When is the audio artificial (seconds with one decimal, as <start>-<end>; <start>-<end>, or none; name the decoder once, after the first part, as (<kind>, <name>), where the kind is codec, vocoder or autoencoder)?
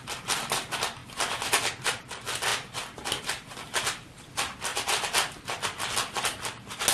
none